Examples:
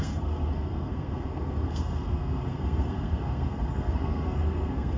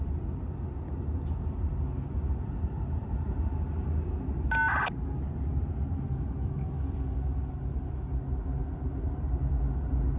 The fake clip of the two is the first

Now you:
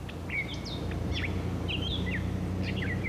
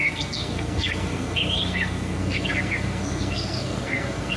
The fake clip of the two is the second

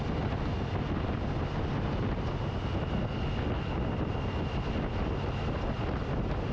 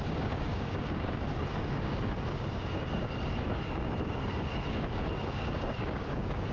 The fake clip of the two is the second